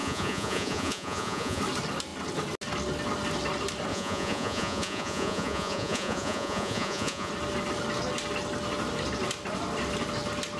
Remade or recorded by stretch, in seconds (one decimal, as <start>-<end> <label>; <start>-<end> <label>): 0.0-1.6 remade; 1.6-3.9 recorded; 3.9-7.3 remade; 7.3-10.6 recorded